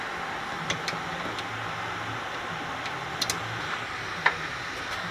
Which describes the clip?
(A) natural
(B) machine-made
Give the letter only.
A